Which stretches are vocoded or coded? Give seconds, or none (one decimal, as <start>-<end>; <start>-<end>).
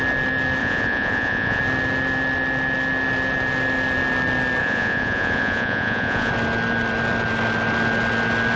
0.6-1.6; 4.6-6.3